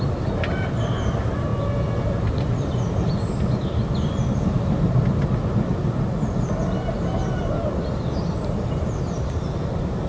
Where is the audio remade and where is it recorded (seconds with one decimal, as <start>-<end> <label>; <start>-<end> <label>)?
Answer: 0.0-10.1 recorded